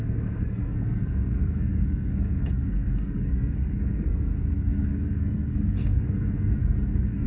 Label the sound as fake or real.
fake